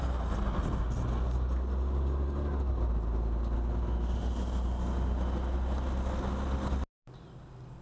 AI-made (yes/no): no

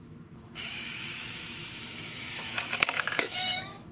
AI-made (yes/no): yes